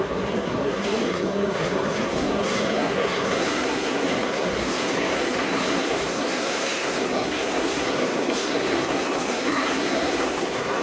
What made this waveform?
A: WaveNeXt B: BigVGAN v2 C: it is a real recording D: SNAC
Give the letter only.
D